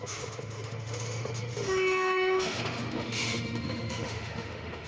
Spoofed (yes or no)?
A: yes